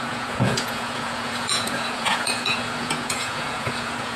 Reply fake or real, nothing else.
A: fake